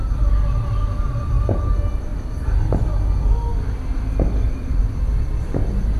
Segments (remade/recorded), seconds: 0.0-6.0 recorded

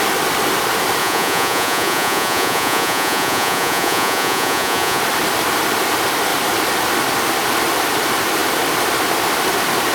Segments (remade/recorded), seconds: 0.0-1.0 recorded; 1.0-5.0 remade; 5.0-9.9 recorded

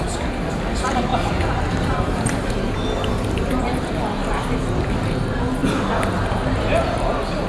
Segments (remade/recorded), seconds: 0.0-7.5 recorded

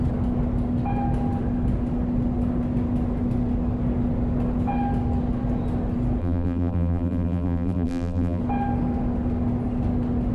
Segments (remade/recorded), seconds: 0.0-6.2 recorded; 6.2-8.4 remade; 8.4-10.3 recorded

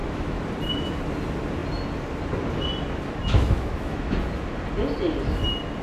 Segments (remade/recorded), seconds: 0.0-0.5 remade; 0.5-3.2 recorded; 3.2-4.2 remade; 4.2-5.8 recorded

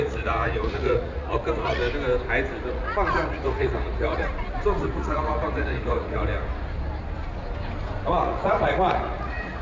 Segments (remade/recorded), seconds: 0.0-1.8 remade; 1.8-2.7 recorded; 2.7-6.3 remade; 6.3-8.1 recorded; 8.1-9.6 remade